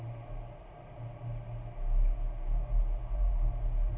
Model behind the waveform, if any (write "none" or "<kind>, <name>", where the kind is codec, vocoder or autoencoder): none